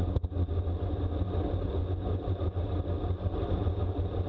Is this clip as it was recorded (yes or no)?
yes